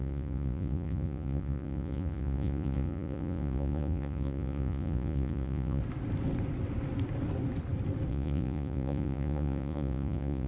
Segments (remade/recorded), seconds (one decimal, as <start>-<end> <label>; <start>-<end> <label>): 0.0-5.8 remade; 5.8-8.1 recorded; 8.1-10.5 remade